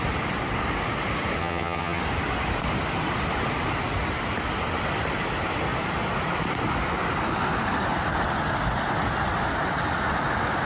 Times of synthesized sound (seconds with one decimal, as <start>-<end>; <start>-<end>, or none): 1.4-2.0